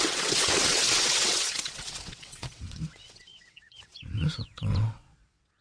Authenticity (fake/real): fake